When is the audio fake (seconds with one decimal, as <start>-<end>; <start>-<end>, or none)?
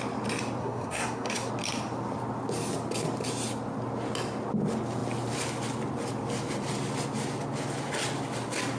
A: 0.6-1.5